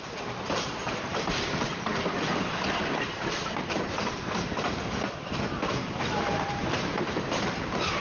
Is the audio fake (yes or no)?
yes